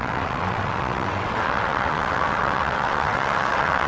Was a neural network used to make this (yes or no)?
yes